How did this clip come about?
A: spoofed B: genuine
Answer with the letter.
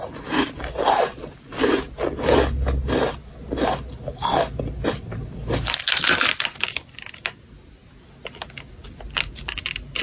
B